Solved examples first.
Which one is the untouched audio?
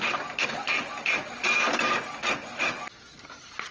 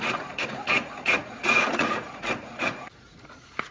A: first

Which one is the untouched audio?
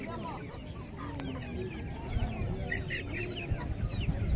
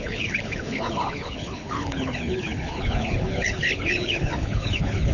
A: first